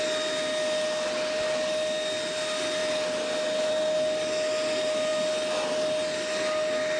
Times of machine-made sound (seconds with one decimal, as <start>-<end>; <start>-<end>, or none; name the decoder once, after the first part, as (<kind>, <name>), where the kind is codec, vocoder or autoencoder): none